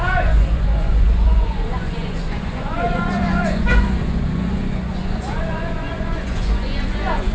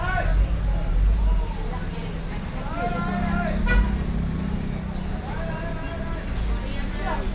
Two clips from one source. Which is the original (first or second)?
second